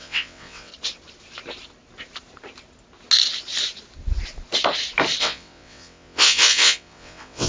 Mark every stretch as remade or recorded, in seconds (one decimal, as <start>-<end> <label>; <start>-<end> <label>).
0.0-0.7 remade; 0.7-5.2 recorded; 5.2-7.5 remade